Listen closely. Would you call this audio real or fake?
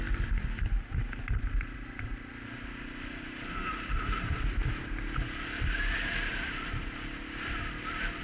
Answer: real